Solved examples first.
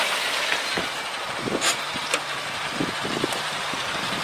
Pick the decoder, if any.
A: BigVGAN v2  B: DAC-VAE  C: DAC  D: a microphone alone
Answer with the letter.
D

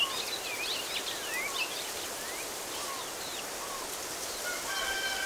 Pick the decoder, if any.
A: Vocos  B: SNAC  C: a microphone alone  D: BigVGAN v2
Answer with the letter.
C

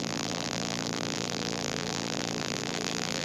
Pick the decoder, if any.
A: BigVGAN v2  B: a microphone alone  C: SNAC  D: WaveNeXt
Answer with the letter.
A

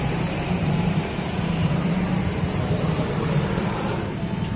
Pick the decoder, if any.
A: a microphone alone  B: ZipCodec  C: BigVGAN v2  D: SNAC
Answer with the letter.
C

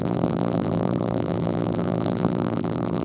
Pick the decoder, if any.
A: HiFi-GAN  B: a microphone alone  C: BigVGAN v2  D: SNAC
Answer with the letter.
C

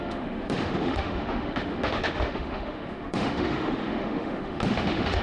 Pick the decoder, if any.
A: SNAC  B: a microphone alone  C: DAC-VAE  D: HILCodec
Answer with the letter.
C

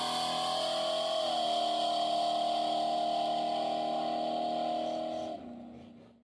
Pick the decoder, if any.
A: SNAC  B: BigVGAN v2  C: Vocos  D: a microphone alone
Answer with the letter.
D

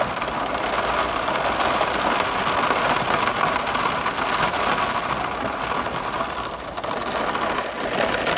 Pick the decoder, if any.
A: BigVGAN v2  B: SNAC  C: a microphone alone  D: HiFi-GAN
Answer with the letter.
C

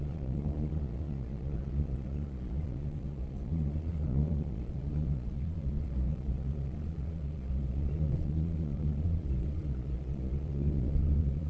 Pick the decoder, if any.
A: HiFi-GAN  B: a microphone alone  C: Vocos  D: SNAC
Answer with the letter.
C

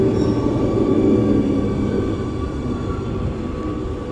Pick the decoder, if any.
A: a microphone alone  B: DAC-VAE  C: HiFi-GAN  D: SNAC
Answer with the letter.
A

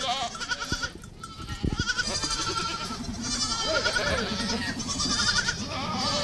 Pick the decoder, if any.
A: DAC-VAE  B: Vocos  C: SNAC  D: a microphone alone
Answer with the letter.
D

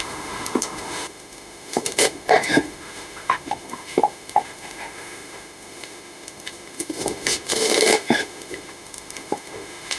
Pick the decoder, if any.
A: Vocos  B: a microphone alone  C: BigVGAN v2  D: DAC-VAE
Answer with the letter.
D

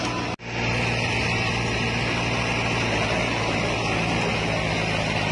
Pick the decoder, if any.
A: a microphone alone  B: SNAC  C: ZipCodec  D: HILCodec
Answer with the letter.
A